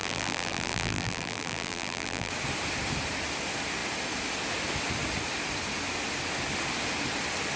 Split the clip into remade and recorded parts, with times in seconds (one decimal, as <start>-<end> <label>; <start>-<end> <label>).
0.0-2.3 remade; 2.3-7.6 recorded